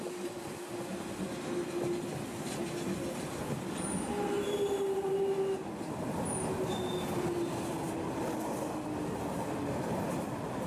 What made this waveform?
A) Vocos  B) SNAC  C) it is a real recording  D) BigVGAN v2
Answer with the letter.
C